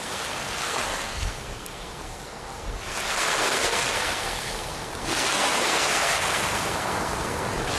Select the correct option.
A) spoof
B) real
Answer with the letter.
A